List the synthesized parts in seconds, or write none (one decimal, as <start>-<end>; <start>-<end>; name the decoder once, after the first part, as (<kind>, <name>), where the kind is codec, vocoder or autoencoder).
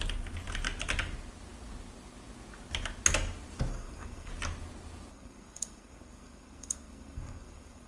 3.7-4.3 (codec, SNAC); 5.1-7.9